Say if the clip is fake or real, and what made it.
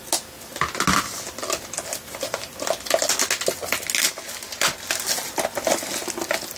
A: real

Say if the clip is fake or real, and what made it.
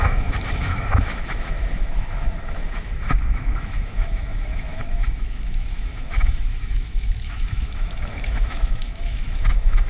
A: fake, autoencoder, DAC-VAE